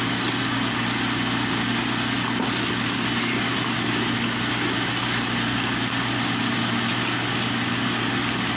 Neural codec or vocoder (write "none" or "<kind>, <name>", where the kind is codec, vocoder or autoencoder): none